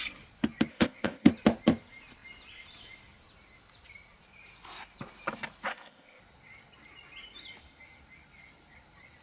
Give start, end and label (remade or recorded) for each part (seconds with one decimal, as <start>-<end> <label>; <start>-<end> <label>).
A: 0.0-0.7 recorded; 0.7-1.3 remade; 1.3-5.7 recorded; 5.7-6.2 remade; 6.2-9.2 recorded